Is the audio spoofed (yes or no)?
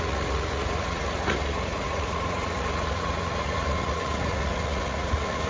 yes